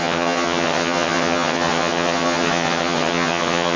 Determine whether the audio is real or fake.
fake